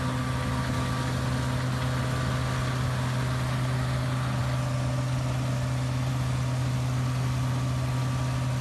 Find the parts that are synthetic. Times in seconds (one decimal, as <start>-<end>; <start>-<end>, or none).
none